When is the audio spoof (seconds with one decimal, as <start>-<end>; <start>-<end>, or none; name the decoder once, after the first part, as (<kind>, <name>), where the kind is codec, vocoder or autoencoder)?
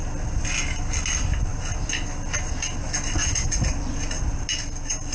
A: none